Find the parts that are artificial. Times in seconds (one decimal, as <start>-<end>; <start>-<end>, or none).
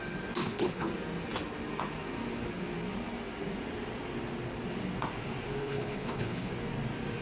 0.4-0.9; 5.6-6.5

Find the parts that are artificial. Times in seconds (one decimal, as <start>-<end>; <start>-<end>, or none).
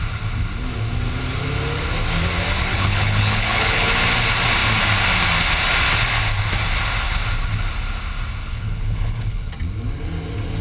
2.7-3.9; 8.4-9.5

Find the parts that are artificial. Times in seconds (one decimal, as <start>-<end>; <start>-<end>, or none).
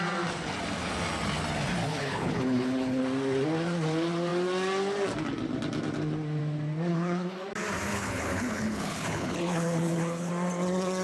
1.9-3.0; 6.9-7.5; 7.9-10.3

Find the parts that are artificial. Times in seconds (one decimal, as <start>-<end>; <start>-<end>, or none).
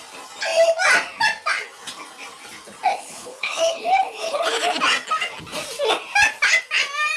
2.9-4.8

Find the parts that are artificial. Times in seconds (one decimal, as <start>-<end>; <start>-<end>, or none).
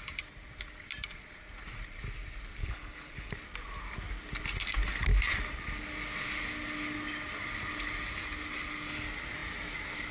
2.6-3.3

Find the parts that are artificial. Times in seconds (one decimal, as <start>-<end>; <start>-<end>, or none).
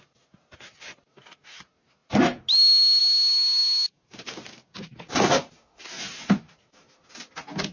none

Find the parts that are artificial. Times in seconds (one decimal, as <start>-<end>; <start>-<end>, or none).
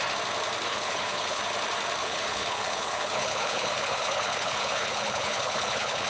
0.7-1.4; 2.0-6.1